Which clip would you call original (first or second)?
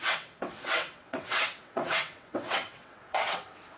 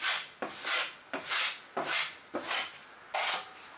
second